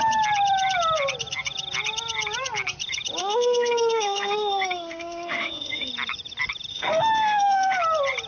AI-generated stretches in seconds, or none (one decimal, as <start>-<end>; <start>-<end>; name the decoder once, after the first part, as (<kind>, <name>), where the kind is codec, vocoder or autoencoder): 3.2-5.9 (autoencoder, DAC-VAE); 6.7-7.8